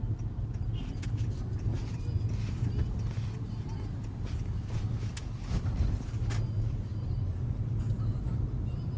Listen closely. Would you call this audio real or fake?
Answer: real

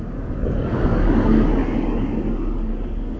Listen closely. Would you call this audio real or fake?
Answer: fake